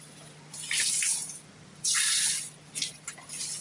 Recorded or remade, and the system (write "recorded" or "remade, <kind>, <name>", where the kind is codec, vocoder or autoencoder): recorded